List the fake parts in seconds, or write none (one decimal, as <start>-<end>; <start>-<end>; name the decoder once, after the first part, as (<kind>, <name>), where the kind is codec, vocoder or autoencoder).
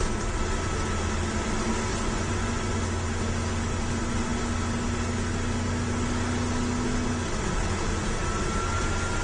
1.9-2.8 (vocoder, Vocos)